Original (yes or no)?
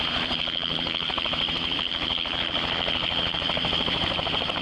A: no